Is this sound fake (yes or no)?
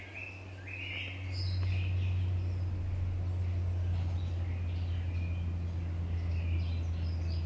no